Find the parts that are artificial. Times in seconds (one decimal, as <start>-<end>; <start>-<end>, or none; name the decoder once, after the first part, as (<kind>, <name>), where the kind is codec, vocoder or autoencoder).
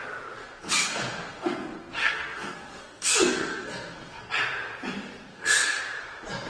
0.4-4.3 (codec, SNAC); 5.3-5.8